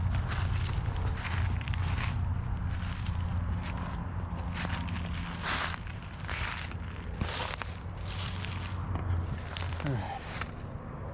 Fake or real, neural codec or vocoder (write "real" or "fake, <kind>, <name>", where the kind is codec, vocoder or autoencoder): real